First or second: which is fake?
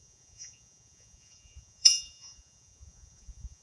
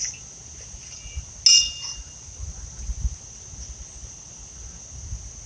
first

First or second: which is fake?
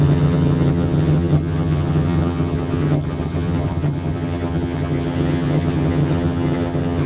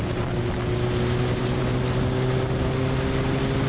first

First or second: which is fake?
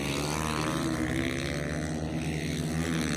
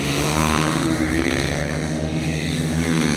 second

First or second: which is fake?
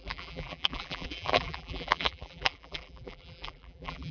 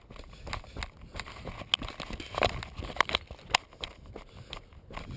first